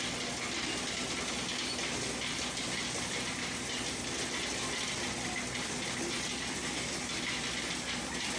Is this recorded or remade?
recorded